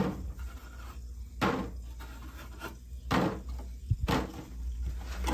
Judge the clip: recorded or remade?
recorded